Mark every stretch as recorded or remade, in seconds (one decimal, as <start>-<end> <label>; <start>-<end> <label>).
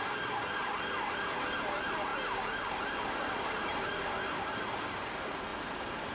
0.0-6.1 recorded